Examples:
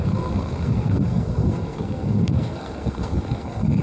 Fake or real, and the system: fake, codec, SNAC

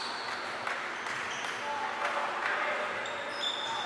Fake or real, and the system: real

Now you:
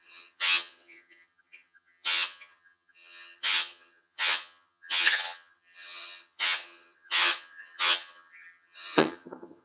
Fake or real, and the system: fake, vocoder, HiFi-GAN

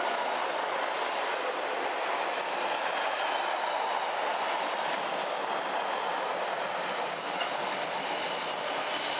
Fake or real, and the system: real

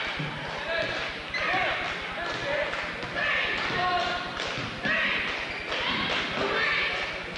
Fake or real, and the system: real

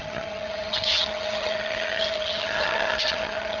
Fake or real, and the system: fake, vocoder, HiFi-GAN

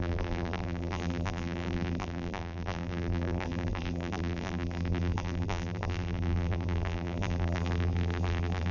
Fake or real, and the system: fake, vocoder, BigVGAN v2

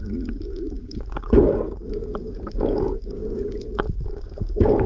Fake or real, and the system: fake, codec, DAC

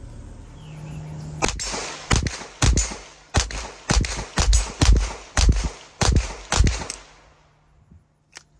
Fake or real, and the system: real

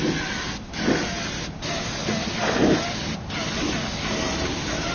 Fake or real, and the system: real